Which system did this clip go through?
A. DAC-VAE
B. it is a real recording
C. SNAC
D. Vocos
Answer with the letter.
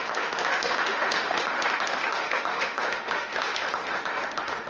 A